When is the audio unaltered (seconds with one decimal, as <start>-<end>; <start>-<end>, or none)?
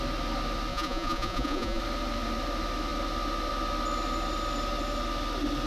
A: 0.0-0.7; 1.8-5.7